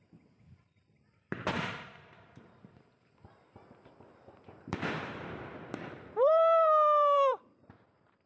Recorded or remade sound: remade